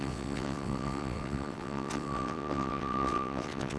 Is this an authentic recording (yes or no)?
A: no